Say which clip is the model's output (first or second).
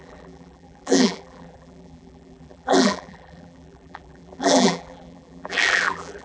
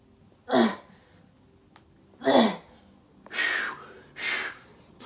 first